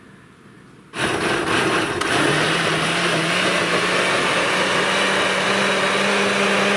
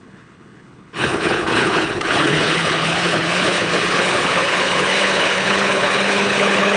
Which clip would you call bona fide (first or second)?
first